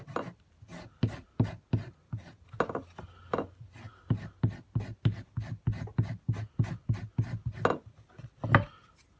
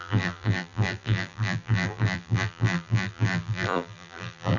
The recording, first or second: first